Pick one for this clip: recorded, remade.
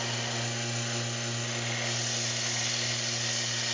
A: recorded